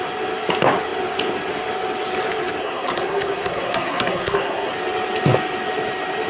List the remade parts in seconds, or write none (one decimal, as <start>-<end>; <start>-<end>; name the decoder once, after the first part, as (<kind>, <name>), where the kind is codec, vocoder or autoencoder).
2.6-4.7 (codec, SNAC)